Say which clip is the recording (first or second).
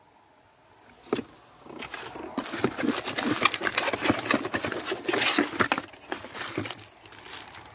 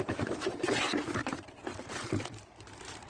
first